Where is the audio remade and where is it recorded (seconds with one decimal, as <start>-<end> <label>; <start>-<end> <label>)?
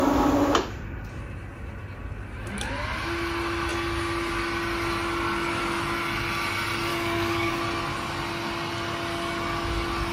0.0-6.9 recorded; 6.9-7.5 remade; 7.5-10.1 recorded